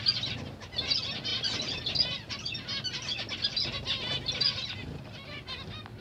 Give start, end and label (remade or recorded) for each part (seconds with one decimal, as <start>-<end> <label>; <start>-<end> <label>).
0.0-6.0 recorded